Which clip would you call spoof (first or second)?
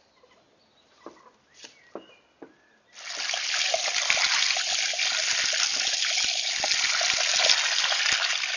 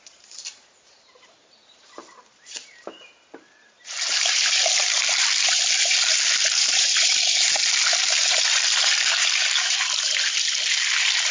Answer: second